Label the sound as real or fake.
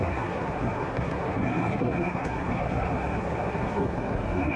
fake